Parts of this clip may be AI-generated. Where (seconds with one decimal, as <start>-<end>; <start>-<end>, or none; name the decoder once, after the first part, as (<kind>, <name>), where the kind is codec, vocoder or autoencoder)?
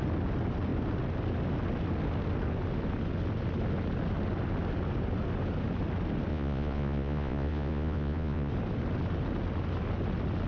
6.3-8.5 (vocoder, Vocos)